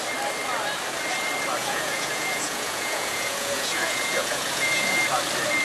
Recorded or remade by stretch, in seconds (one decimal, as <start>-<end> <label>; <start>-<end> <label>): 0.0-1.6 recorded; 1.6-5.0 remade; 5.0-5.6 recorded